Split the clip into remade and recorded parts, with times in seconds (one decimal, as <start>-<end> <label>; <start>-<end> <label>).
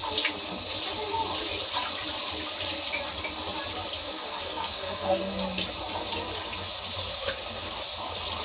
0.0-4.0 recorded; 4.0-5.2 remade; 5.2-8.4 recorded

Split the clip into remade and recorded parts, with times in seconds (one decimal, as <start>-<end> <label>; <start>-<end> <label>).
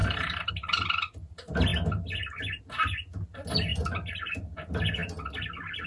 0.0-0.5 remade; 0.5-3.7 recorded; 3.7-4.3 remade; 4.3-5.9 recorded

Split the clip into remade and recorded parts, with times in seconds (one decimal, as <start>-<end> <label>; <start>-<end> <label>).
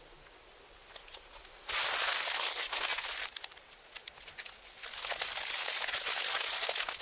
0.0-2.9 recorded; 2.9-4.1 remade; 4.1-7.0 recorded